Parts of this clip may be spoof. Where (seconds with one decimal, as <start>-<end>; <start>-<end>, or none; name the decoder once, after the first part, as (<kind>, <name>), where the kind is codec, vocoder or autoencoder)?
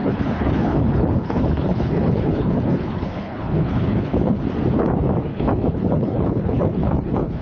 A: 0.0-4.4 (codec, HILCodec); 5.3-7.4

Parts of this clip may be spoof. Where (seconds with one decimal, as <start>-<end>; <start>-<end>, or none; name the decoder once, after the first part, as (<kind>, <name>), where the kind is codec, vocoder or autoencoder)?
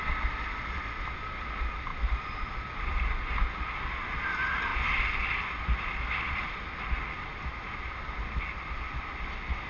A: none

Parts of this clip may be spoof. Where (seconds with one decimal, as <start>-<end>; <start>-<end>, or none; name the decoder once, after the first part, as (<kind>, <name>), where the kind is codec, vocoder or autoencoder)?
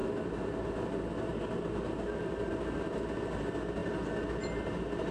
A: none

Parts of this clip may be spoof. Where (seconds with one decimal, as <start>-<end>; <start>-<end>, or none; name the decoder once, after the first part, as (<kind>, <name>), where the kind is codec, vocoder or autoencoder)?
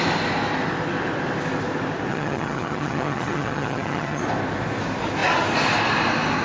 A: 2.1-4.2 (vocoder, HiFi-GAN)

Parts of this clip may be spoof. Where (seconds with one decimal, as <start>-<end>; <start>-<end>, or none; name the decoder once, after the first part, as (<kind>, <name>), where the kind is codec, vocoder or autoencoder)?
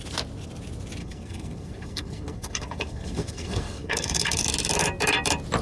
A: 1.0-4.4 (codec, SNAC)